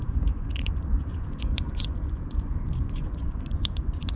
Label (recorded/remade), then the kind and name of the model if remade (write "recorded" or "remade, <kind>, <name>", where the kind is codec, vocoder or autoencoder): remade, vocoder, Vocos